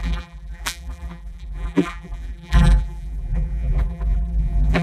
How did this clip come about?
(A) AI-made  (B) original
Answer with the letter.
A